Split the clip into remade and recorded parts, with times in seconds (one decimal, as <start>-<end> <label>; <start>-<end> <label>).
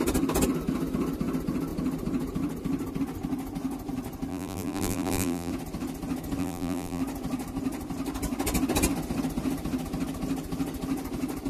0.0-4.3 recorded; 4.3-5.5 remade; 5.5-6.4 recorded; 6.4-7.0 remade; 7.0-11.5 recorded